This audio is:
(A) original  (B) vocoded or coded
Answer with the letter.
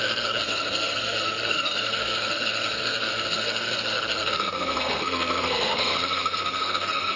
B